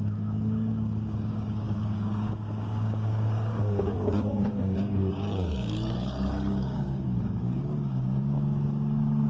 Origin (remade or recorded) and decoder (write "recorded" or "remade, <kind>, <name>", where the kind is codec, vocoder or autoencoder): remade, codec, DAC